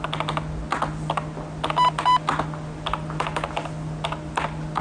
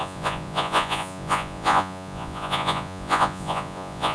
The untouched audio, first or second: first